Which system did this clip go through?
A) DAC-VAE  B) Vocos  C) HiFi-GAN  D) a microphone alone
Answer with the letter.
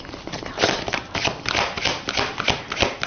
D